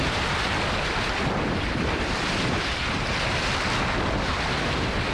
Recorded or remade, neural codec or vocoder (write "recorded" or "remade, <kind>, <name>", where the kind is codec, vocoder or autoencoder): recorded